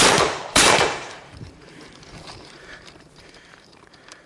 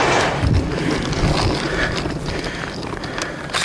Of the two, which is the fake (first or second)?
first